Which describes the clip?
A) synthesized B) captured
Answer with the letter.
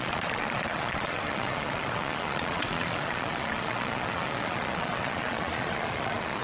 A